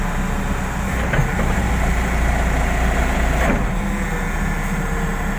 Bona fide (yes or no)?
yes